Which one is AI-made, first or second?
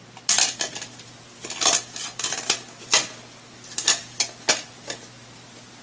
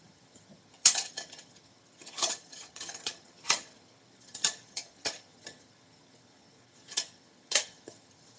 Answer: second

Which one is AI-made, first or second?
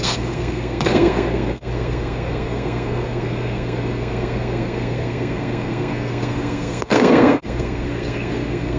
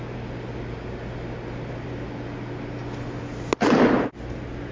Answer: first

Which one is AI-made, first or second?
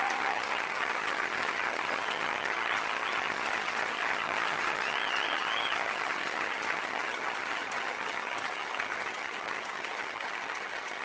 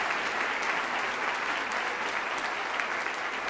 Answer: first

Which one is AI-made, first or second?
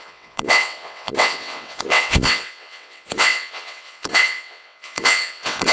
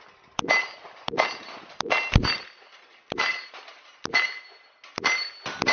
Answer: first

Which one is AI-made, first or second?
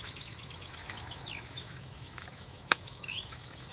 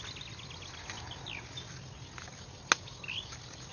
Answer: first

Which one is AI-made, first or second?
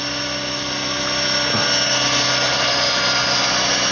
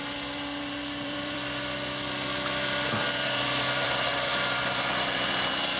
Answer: second